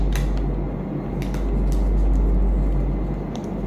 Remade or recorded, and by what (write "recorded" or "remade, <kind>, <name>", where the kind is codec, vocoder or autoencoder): recorded